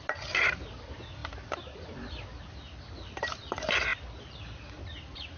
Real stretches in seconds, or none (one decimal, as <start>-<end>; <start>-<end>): 0.0-5.4